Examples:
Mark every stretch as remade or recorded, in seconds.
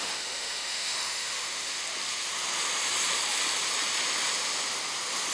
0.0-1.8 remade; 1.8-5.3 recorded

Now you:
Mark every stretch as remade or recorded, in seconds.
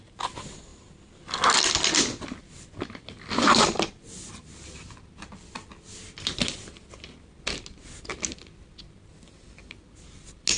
0.0-10.6 recorded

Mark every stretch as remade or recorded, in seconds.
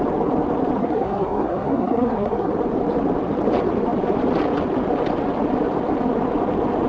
0.0-0.8 recorded; 0.8-2.5 remade; 2.5-6.9 recorded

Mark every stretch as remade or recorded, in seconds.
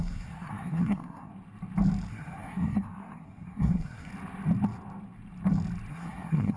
0.0-1.3 remade; 1.3-2.1 recorded; 2.1-4.1 remade; 4.1-5.9 recorded; 5.9-6.6 remade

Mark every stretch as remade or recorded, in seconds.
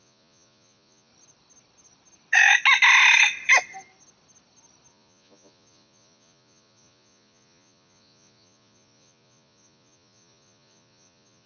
0.0-1.1 remade; 1.1-4.9 recorded; 4.9-11.5 remade